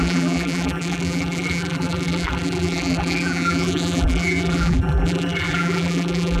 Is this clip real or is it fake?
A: fake